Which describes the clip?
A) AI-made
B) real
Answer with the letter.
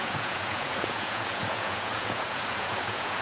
A